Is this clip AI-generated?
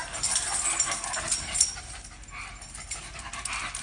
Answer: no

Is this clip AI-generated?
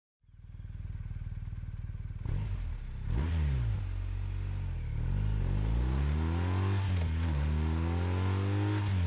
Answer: no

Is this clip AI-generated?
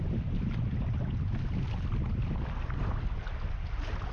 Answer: no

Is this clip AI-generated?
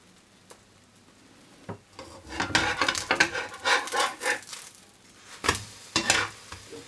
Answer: no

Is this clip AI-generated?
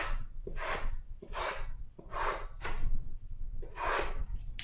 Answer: no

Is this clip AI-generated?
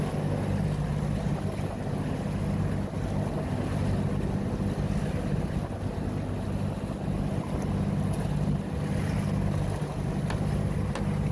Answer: no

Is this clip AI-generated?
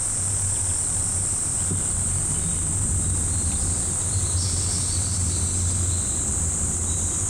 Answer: no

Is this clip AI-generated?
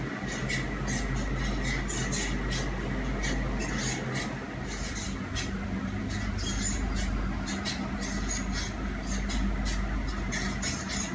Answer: no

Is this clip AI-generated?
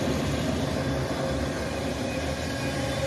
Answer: no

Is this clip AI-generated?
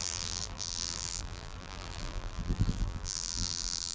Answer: yes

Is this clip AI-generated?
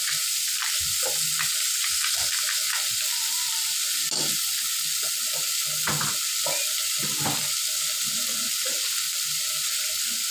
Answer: no